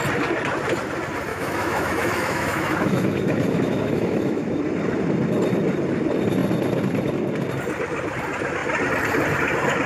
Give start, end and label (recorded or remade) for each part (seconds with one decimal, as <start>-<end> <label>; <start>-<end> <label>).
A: 0.0-1.3 recorded; 1.3-4.6 remade; 4.6-9.9 recorded

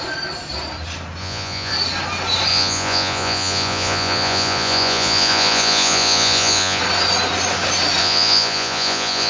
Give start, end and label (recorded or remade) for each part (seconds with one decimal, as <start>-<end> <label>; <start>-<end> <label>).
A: 0.0-1.2 recorded; 1.2-1.7 remade; 1.7-2.5 recorded; 2.5-6.8 remade; 6.8-8.0 recorded; 8.0-9.3 remade

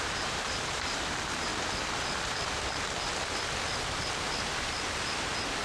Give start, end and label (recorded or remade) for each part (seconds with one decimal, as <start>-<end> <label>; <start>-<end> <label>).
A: 0.0-1.5 remade; 1.5-4.8 recorded; 4.8-5.6 remade

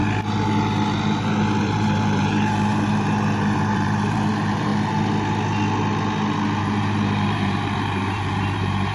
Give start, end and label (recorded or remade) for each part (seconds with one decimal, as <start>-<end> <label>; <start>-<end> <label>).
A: 0.0-1.6 recorded; 1.6-4.7 remade; 4.7-6.6 recorded; 6.6-8.9 remade

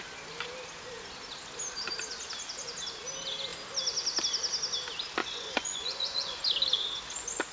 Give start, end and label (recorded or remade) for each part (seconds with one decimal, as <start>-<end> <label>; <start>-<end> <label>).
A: 0.0-5.2 recorded; 5.2-6.4 remade; 6.4-7.5 recorded

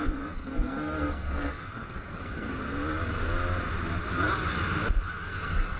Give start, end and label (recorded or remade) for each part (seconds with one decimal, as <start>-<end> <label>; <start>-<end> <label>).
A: 0.0-2.6 remade; 2.6-5.1 recorded; 5.1-5.8 remade

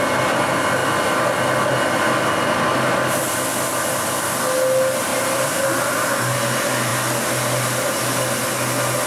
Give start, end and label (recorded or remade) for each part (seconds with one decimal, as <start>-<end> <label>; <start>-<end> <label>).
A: 0.0-5.1 recorded; 5.1-5.9 remade; 5.9-9.1 recorded

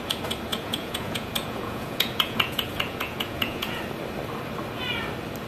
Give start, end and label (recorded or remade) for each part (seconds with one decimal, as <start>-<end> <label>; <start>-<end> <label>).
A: 0.0-0.5 recorded; 0.5-3.8 remade; 3.8-5.5 recorded